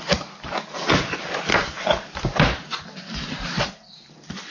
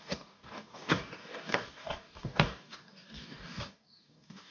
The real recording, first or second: first